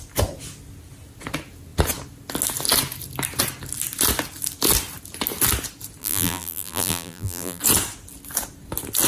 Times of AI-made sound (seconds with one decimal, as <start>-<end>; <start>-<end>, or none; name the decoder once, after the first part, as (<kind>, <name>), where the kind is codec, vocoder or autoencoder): 6.0-7.6 (vocoder, BigVGAN v2)